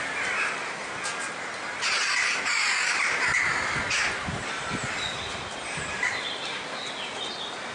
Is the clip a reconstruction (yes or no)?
no